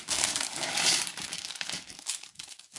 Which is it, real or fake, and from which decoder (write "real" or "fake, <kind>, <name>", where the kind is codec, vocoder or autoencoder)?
fake, codec, DAC